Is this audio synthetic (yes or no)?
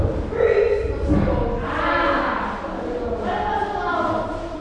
no